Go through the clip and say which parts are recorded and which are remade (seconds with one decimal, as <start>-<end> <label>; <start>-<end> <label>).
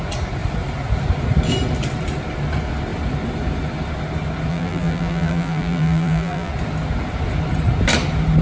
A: 0.0-4.5 recorded; 4.5-6.5 remade; 6.5-8.4 recorded